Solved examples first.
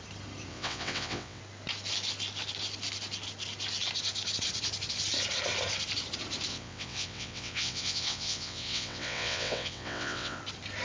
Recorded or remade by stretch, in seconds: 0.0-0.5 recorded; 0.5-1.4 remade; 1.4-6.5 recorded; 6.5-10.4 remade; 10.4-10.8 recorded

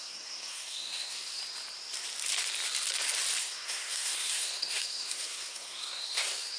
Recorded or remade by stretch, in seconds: 0.0-1.4 remade; 1.4-3.4 recorded; 3.4-6.6 remade

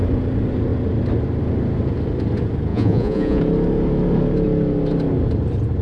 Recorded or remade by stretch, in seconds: 0.0-2.7 recorded; 2.7-3.4 remade; 3.4-5.8 recorded

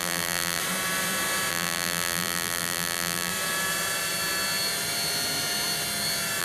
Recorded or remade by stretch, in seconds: 0.0-0.6 remade; 0.6-1.5 recorded; 1.5-3.3 remade; 3.3-6.4 recorded

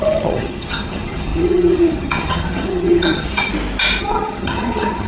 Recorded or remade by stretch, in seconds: 0.0-3.5 remade; 3.5-4.0 recorded; 4.0-5.1 remade

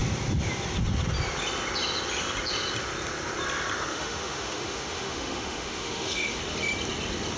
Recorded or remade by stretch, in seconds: 0.0-3.9 recorded; 3.9-6.4 remade; 6.4-7.4 recorded

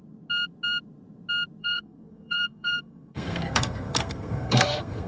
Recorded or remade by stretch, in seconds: 0.0-1.6 recorded; 1.6-5.1 remade